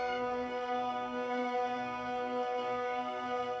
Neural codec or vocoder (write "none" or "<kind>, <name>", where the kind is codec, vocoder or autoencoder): codec, SNAC